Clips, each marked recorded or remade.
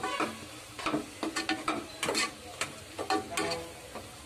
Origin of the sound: recorded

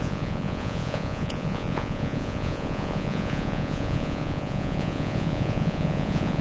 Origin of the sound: remade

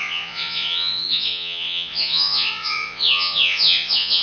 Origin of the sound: remade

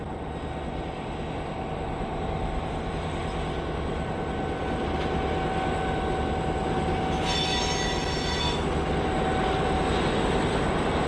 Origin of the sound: recorded